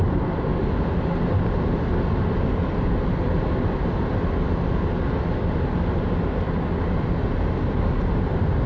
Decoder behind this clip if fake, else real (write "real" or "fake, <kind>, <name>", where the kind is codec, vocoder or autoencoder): real